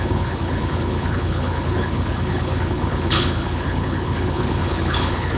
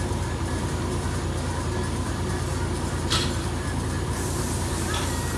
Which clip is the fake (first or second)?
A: first